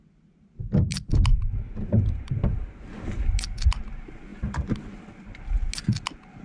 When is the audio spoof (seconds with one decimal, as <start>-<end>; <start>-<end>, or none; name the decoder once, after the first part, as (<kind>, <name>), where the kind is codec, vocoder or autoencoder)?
0.9-3.8 (vocoder, BigVGAN v2)